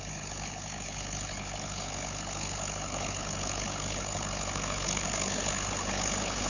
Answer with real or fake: fake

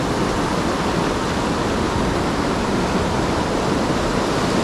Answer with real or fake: real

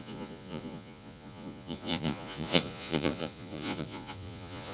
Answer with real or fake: fake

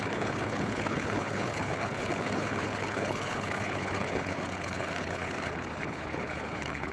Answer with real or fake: fake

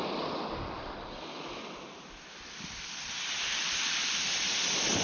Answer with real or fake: real